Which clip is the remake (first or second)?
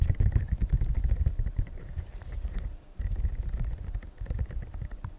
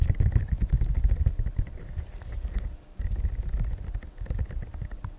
first